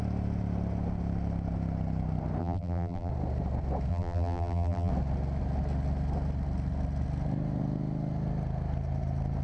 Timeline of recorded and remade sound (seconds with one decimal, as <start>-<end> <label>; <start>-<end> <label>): 0.0-2.4 recorded; 2.4-3.1 remade; 3.1-3.9 recorded; 3.9-4.9 remade; 4.9-9.4 recorded